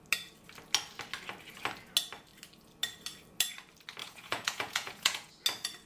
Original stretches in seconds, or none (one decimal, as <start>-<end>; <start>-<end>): 0.0-4.0; 5.3-5.9